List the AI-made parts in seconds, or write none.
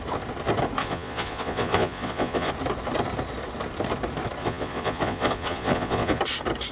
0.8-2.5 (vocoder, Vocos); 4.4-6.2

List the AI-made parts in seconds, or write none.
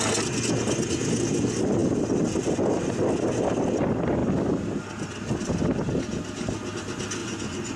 7.2-7.8 (vocoder, Vocos)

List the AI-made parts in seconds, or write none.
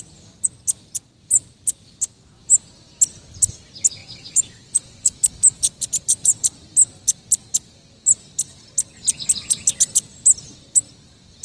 4.0-5.1 (vocoder, Vocos)